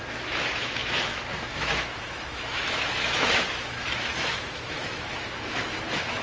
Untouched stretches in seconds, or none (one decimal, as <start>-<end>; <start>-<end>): none